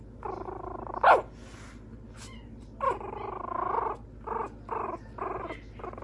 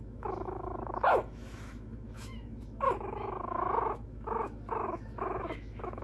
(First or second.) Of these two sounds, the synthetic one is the second